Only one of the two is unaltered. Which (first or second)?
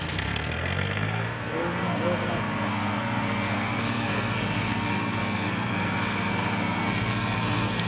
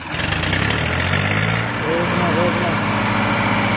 second